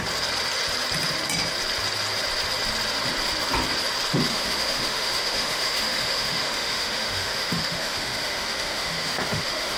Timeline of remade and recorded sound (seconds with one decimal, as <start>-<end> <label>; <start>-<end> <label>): 0.0-4.3 recorded; 4.3-9.8 remade